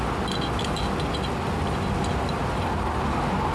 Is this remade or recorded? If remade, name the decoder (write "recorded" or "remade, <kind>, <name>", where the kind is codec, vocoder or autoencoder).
recorded